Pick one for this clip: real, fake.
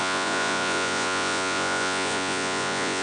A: fake